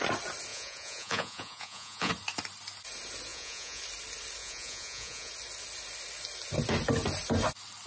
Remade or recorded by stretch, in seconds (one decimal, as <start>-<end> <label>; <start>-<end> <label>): 0.0-0.5 recorded; 0.5-2.1 remade; 2.1-3.3 recorded; 3.3-3.8 remade; 3.8-4.4 recorded; 4.4-5.3 remade; 5.3-7.9 recorded